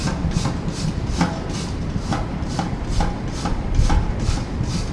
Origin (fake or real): fake